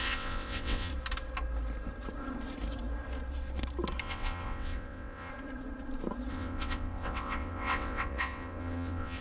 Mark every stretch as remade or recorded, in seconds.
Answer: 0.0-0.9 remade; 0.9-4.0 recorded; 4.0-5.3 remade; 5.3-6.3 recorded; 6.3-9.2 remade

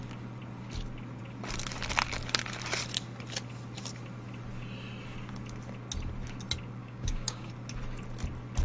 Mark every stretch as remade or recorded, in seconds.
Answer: 0.0-6.8 recorded; 6.8-7.5 remade; 7.5-8.6 recorded

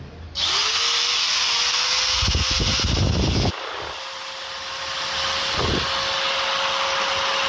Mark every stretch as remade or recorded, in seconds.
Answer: 0.0-7.5 recorded

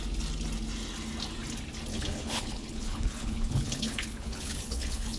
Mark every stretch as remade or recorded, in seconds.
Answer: 0.0-1.9 recorded; 1.9-5.2 remade

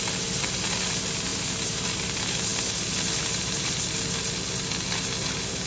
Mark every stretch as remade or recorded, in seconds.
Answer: 0.0-1.3 recorded; 1.3-1.8 remade; 1.8-5.7 recorded

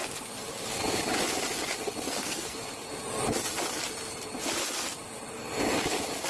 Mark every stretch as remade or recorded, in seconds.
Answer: 0.0-2.1 recorded; 2.1-2.6 remade; 2.6-6.3 recorded